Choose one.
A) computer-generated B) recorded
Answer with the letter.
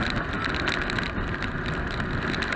B